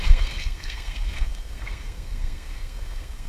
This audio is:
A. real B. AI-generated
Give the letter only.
B